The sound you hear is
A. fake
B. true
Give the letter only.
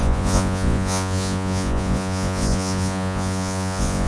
A